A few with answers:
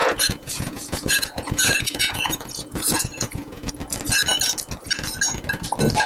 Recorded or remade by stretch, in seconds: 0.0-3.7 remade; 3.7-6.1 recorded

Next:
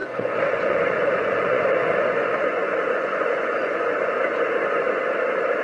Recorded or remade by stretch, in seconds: 0.0-5.0 remade; 5.0-5.6 recorded

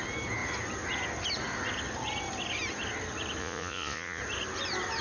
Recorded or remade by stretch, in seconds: 0.0-3.4 recorded; 3.4-4.2 remade; 4.2-5.0 recorded

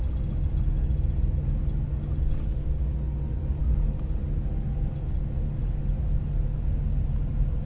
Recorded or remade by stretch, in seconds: 0.0-7.7 recorded

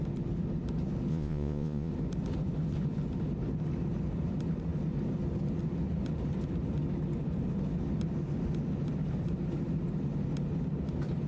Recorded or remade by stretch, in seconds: 0.0-1.1 recorded; 1.1-1.9 remade; 1.9-11.3 recorded

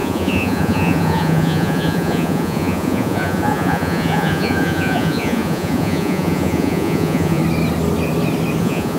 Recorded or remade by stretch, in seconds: 0.0-7.4 remade; 7.4-8.6 recorded; 8.6-9.0 remade

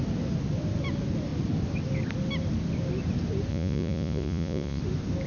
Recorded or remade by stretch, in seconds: 0.0-3.5 recorded; 3.5-4.8 remade; 4.8-5.3 recorded

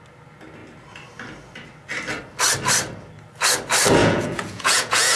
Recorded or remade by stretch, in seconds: 0.0-4.0 recorded; 4.0-5.2 remade